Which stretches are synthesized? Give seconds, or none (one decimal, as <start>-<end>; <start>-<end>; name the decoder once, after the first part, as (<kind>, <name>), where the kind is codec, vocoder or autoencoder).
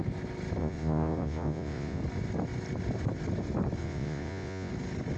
0.6-2.0 (vocoder, Vocos); 3.8-4.7